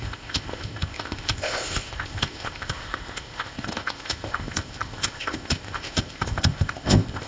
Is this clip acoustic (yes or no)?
no